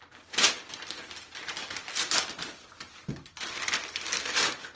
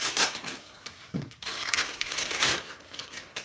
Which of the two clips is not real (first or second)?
second